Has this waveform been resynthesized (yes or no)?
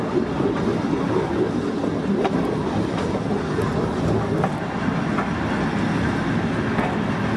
no